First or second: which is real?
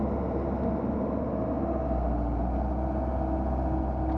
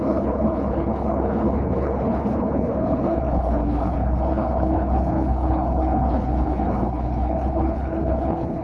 first